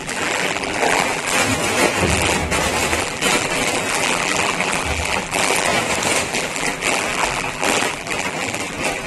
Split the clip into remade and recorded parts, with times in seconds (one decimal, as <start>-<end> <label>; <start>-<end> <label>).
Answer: 0.0-1.4 remade; 1.4-2.0 recorded; 2.0-2.4 remade; 2.4-3.0 recorded; 3.0-5.7 remade; 5.7-6.3 recorded; 6.3-9.1 remade